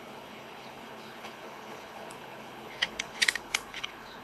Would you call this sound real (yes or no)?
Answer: no